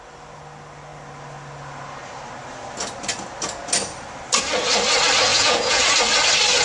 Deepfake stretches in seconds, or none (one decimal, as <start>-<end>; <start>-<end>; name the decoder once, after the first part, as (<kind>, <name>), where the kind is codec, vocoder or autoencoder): 5.3-5.9 (vocoder, Vocos)